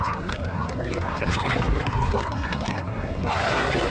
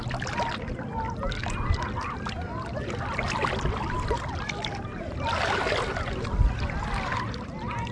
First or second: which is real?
second